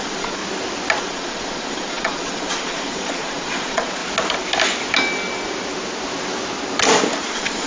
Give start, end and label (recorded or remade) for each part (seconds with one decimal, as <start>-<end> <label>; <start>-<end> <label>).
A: 0.0-0.4 remade; 0.4-1.0 recorded; 1.0-4.0 remade; 4.0-7.3 recorded; 7.3-7.7 remade